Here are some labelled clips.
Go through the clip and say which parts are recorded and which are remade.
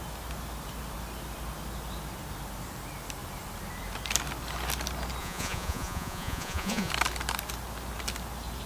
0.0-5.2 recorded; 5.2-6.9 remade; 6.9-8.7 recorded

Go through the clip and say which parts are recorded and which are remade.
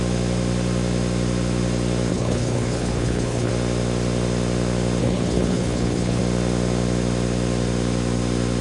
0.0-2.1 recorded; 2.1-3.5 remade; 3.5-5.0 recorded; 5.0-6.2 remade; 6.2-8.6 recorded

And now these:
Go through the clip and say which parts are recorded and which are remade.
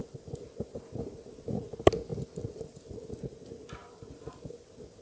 0.0-1.3 remade; 1.3-2.1 recorded; 2.1-3.0 remade; 3.0-3.8 recorded; 3.8-4.6 remade; 4.6-5.0 recorded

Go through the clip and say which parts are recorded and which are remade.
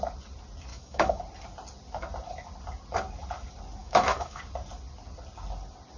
0.0-0.7 recorded; 0.7-1.2 remade; 1.2-3.8 recorded; 3.8-4.4 remade; 4.4-6.0 recorded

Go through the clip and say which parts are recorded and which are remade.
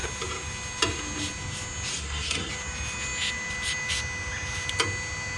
0.0-1.9 recorded; 1.9-2.5 remade; 2.5-5.4 recorded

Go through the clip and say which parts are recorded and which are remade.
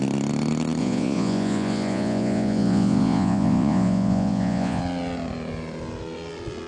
0.0-0.8 recorded; 0.8-4.8 remade; 4.8-6.7 recorded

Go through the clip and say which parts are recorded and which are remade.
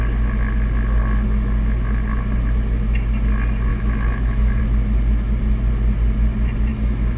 0.0-3.7 recorded; 3.7-4.6 remade; 4.6-6.7 recorded; 6.7-7.2 remade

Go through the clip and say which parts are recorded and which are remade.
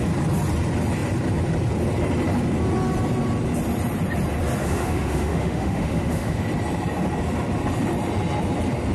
0.0-4.6 recorded; 4.6-6.4 remade; 6.4-8.9 recorded